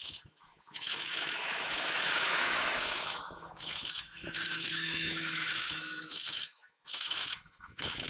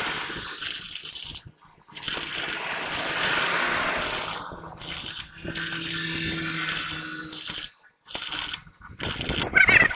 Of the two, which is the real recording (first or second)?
second